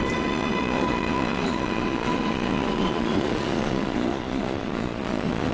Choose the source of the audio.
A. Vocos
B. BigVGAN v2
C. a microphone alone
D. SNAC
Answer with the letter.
A